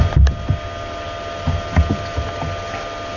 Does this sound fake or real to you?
real